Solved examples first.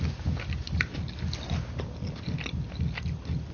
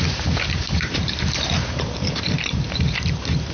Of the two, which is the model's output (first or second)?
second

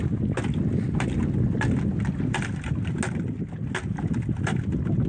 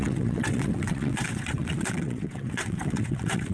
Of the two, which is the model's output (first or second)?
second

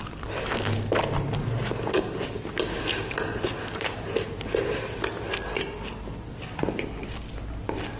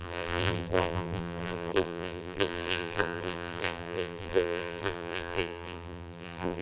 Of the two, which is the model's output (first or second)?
second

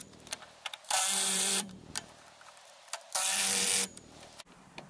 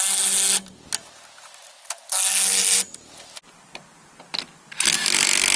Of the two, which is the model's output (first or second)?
first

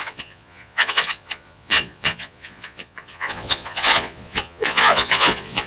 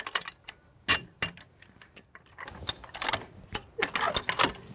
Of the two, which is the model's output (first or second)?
first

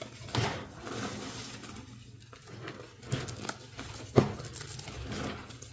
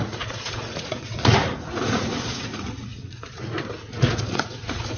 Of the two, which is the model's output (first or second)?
second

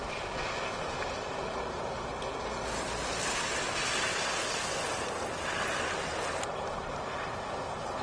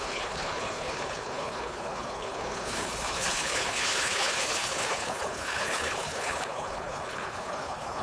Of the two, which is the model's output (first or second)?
second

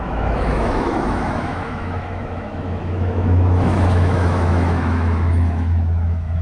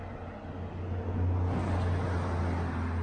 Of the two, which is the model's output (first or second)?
first